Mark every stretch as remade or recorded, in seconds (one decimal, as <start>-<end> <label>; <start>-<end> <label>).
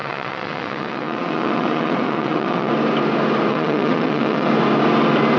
0.0-2.7 remade; 2.7-3.5 recorded; 3.5-4.5 remade; 4.5-5.4 recorded